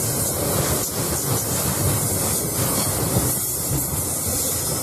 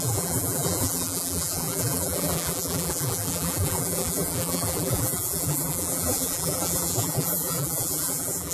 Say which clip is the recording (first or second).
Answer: first